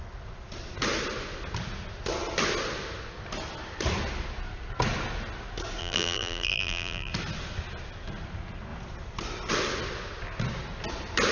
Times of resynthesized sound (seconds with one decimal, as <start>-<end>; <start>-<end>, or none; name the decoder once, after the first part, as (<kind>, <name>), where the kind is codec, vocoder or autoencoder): 5.8-7.1 (vocoder, BigVGAN v2)